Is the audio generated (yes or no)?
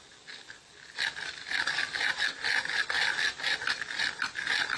no